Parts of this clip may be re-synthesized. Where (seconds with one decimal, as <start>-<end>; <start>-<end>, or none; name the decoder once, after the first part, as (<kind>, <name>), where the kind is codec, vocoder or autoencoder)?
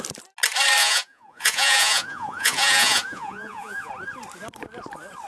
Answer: 0.8-3.9 (vocoder, Vocos)